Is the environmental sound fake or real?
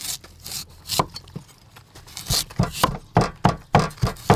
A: real